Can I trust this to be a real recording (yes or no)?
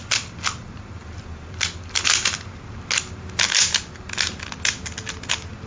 yes